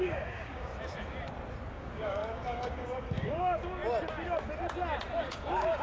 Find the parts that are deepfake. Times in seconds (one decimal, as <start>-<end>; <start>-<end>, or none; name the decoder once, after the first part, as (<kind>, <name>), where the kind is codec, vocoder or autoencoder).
0.0-0.7 (codec, DAC); 1.7-3.8; 5.2-5.8

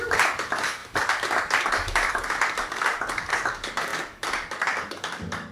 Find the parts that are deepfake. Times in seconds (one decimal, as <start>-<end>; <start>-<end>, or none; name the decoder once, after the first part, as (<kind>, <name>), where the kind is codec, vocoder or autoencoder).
0.0-5.5 (codec, DAC)

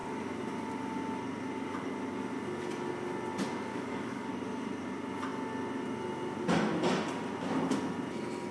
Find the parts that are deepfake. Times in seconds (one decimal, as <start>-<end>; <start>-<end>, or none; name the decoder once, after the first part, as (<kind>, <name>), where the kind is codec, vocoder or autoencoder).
3.7-4.3 (codec, DAC)

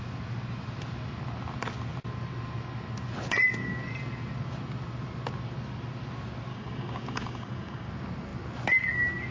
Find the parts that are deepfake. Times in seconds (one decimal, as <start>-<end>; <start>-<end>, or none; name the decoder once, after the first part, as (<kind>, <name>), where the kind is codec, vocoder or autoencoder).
6.5-7.9 (codec, DAC)

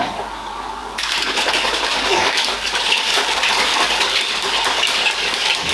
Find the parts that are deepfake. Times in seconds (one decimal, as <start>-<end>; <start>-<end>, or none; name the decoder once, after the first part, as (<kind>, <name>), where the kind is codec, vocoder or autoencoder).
0.0-5.7 (codec, DAC)